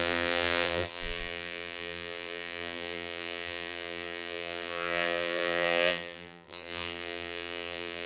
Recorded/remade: remade